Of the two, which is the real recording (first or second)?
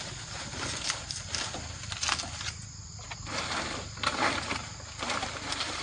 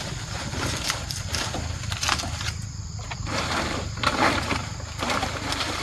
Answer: first